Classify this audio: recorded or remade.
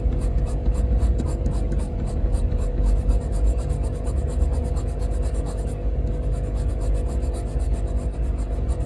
remade